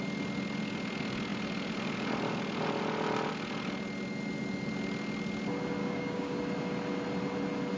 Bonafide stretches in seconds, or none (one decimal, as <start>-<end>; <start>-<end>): 0.0-5.8; 6.4-7.8